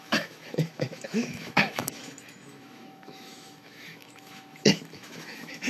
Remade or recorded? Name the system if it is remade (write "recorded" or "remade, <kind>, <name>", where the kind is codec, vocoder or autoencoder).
remade, autoencoder, DAC-VAE